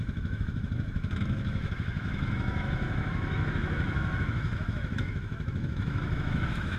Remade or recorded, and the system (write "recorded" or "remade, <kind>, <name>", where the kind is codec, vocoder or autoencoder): remade, autoencoder, DAC-VAE